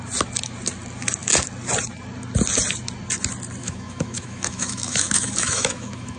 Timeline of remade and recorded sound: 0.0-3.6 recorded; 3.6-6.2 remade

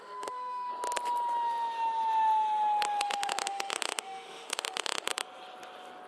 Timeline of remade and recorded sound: 0.0-0.7 remade; 0.7-3.0 recorded; 3.0-5.1 remade; 5.1-6.1 recorded

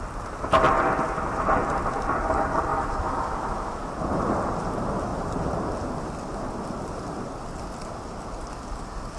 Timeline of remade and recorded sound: 0.0-2.7 recorded; 2.7-3.9 remade; 3.9-9.2 recorded

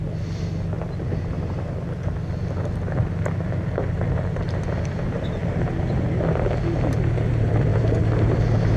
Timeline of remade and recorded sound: 0.0-8.8 recorded